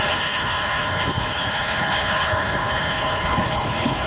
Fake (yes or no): yes